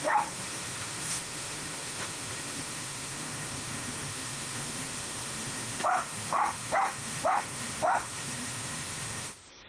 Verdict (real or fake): fake